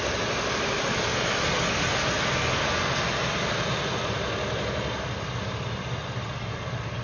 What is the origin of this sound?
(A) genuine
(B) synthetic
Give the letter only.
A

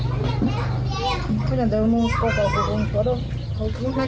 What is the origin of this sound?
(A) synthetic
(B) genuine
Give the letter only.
B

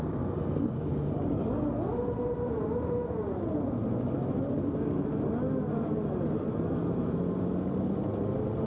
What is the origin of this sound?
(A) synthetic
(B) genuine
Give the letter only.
B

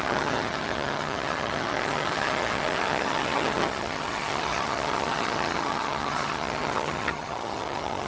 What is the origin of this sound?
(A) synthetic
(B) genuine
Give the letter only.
A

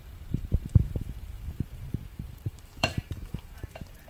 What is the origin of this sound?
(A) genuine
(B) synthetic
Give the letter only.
B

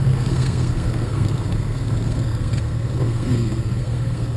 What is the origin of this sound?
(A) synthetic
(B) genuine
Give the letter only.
A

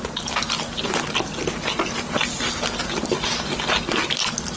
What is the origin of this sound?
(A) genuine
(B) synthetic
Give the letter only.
A